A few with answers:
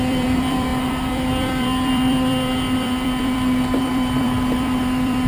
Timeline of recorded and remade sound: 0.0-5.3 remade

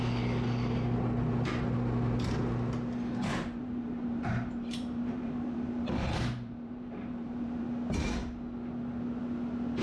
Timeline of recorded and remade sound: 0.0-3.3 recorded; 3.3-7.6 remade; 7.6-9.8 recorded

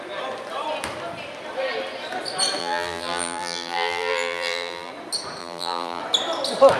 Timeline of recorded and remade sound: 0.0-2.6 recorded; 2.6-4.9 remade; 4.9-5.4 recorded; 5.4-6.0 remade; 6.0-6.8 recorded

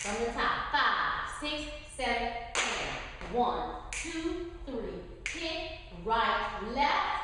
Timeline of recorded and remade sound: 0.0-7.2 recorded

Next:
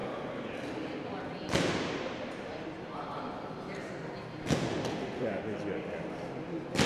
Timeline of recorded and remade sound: 0.0-4.1 remade; 4.1-6.9 recorded

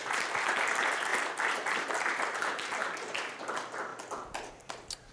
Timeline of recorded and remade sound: 0.0-5.1 remade